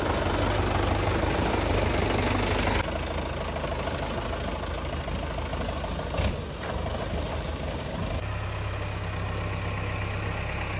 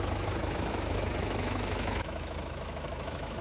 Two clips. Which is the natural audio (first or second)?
first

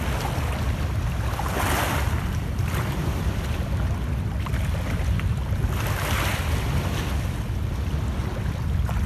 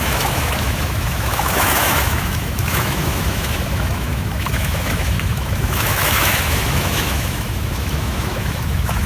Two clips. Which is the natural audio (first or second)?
first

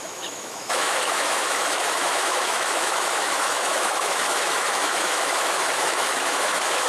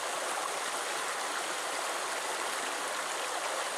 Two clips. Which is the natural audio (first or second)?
second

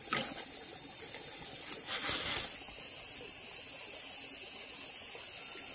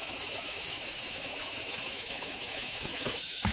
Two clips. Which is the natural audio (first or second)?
first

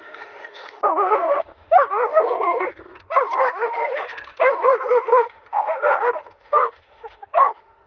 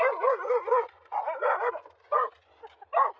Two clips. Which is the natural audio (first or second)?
second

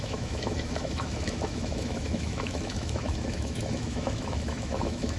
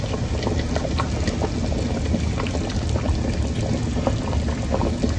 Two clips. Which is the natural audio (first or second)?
second